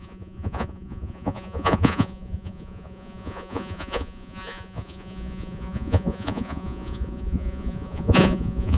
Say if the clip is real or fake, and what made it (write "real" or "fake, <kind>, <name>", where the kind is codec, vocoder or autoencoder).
fake, vocoder, Vocos